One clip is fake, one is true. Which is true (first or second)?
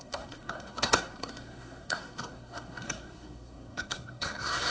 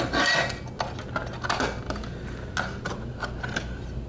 second